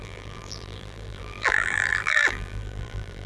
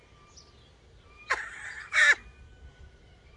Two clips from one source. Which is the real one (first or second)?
second